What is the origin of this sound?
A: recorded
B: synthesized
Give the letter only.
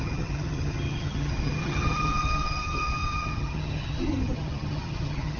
B